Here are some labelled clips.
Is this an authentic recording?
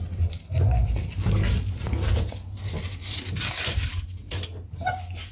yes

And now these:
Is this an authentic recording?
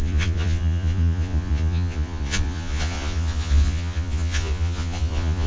no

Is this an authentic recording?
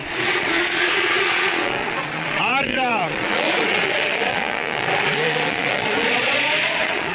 no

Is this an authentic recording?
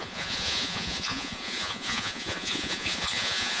no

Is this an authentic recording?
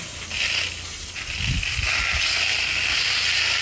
yes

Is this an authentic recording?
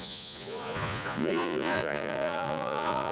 no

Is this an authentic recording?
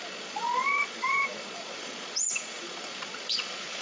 no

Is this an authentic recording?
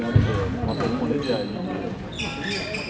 yes